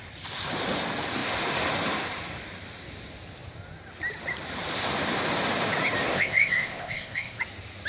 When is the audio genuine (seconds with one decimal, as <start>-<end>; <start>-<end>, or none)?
0.0-6.1; 7.4-7.9